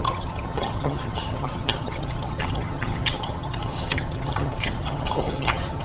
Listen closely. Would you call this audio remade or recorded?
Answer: remade